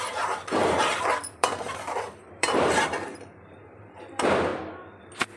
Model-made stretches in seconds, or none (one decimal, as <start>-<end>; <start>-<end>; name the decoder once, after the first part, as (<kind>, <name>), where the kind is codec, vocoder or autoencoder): 0.0-4.5 (vocoder, BigVGAN v2); 5.0-5.4